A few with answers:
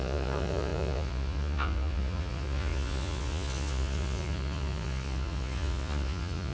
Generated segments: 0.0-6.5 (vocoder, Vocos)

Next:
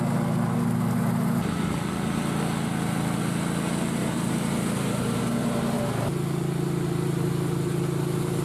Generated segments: 4.0-5.8 (vocoder, BigVGAN v2)

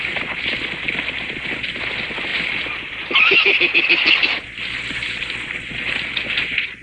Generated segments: none

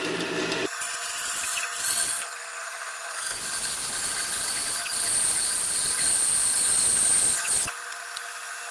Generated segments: 2.1-3.4 (codec, SNAC)

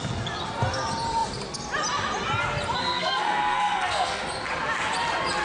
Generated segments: 2.8-4.2 (codec, SNAC)

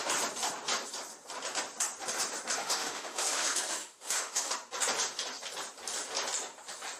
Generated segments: 2.6-4.5 (autoencoder, DAC-VAE)